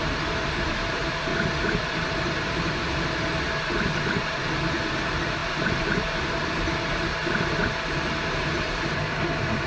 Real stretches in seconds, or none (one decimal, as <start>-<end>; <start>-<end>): 1.3-1.9; 4.4-4.9; 7.2-8.4